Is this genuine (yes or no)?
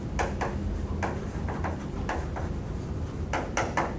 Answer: yes